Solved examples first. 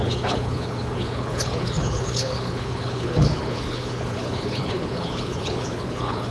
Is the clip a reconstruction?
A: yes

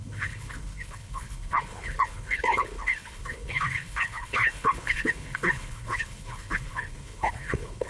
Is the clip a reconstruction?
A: yes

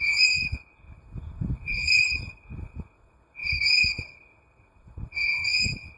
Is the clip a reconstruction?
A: yes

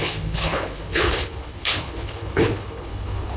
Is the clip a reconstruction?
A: yes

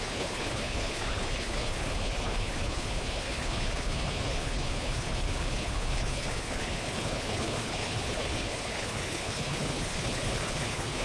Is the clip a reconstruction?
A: yes